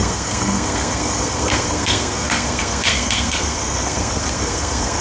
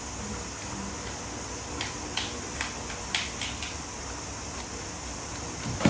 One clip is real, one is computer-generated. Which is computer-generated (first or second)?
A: first